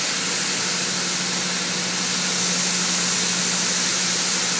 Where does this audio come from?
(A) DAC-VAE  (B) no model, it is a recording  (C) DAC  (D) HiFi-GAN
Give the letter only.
B